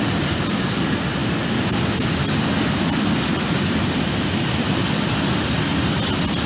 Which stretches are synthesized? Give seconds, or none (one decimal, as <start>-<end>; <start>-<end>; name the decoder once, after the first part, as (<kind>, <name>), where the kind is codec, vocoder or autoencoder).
none